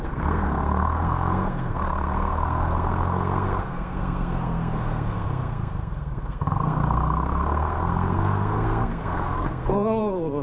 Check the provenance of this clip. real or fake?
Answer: fake